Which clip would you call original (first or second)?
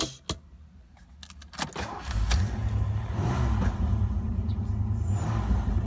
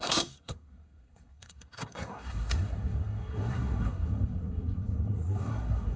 first